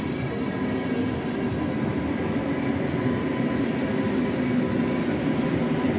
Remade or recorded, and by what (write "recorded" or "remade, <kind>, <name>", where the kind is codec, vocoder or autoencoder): recorded